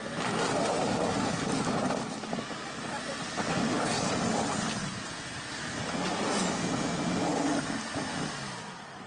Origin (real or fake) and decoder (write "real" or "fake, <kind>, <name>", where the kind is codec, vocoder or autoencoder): real